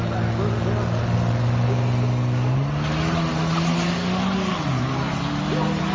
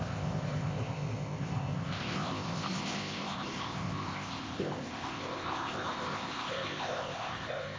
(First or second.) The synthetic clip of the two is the second